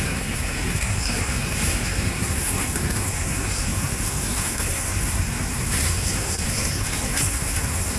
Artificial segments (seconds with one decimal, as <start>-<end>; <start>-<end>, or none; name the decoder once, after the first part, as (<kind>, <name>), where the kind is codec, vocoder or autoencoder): 0.0-8.0 (codec, SNAC)